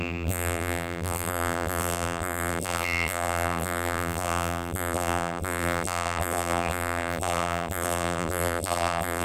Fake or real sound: fake